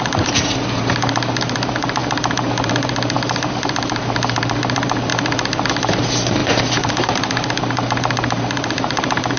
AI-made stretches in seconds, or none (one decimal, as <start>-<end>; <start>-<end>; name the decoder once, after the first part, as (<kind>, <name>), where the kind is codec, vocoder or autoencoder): 0.0-5.1 (vocoder, BigVGAN v2); 5.7-9.4